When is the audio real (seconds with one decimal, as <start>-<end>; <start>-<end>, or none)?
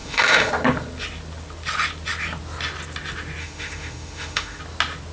0.5-3.4; 4.6-5.1